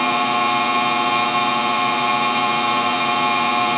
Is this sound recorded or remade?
remade